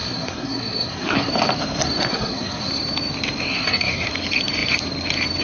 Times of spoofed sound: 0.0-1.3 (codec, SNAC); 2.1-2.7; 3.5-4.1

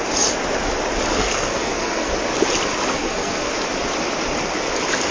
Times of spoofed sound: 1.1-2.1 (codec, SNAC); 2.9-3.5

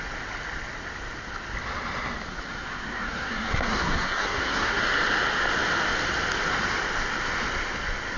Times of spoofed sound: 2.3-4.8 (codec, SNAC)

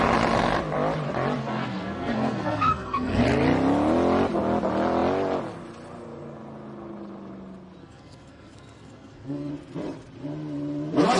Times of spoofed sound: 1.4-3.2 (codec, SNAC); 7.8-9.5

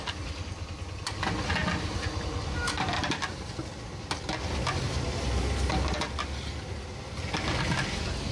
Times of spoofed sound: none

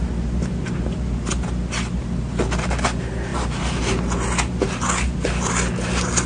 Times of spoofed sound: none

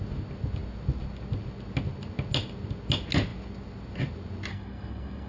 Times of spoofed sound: 4.5-5.3 (codec, SNAC)

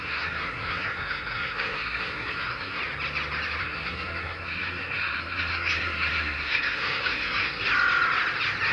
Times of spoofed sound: 0.0-2.8 (codec, SNAC); 3.6-7.6